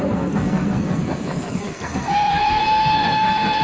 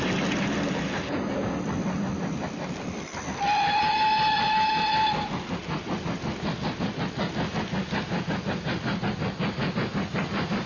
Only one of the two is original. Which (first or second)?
second